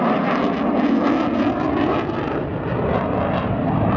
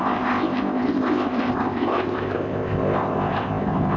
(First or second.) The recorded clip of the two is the first